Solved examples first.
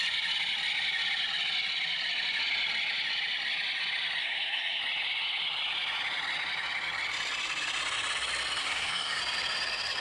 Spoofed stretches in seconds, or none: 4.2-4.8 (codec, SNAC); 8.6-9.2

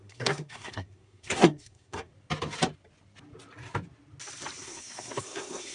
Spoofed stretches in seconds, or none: 0.0-2.1 (codec, SNAC); 4.6-5.7

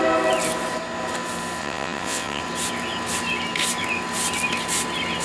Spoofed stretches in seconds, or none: 1.6-2.4 (vocoder, WaveNeXt)

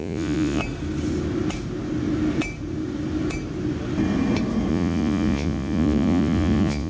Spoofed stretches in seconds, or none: 0.0-0.6 (vocoder, Vocos); 4.7-6.9

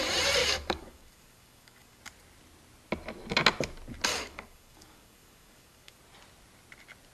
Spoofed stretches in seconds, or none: 0.4-2.0 (codec, DAC); 4.1-6.0